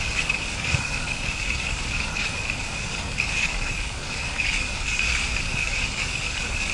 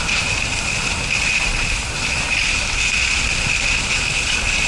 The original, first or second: second